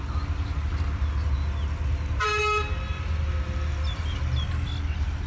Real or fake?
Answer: real